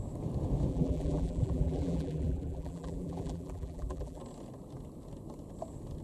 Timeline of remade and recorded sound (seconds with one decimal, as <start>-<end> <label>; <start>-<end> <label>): 0.0-0.7 recorded; 0.7-4.2 remade; 4.2-6.0 recorded